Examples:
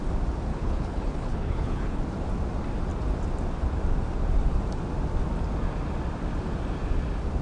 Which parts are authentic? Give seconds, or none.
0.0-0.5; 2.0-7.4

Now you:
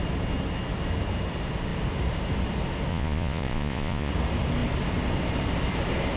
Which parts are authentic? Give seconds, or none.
0.0-2.9; 4.1-6.2